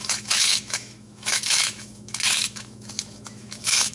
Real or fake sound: fake